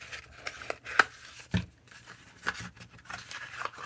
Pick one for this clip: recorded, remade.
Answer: recorded